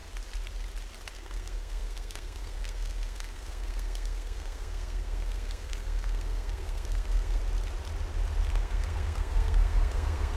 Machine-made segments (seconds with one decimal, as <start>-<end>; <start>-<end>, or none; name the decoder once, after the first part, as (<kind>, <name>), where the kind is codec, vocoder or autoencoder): 1.1-7.4 (codec, SNAC); 8.5-10.4